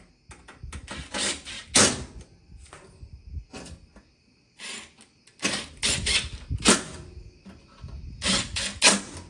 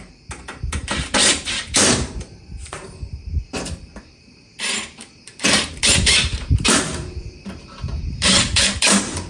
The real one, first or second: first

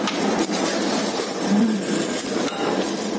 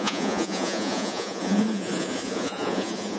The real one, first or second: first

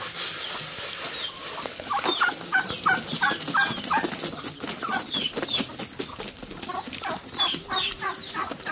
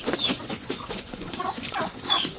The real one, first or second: first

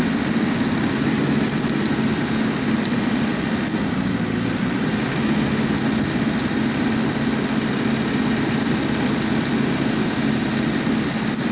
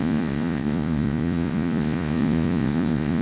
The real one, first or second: first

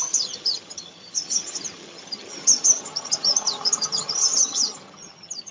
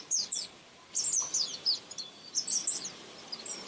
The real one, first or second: second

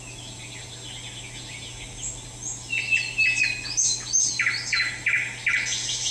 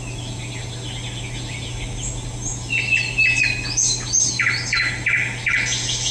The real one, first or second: first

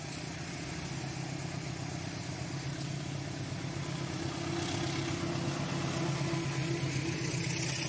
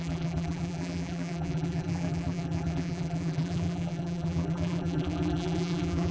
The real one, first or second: first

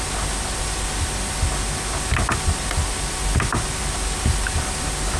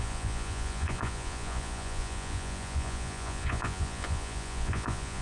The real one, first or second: first